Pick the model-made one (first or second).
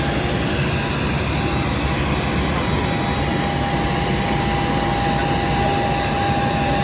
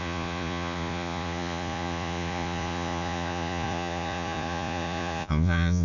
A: second